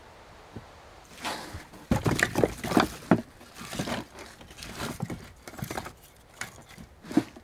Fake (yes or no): no